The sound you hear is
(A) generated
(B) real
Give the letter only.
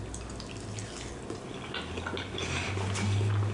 B